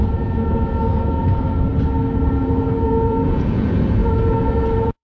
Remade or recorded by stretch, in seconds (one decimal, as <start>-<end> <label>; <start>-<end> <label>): 0.0-1.7 remade; 1.7-2.3 recorded; 2.3-5.0 remade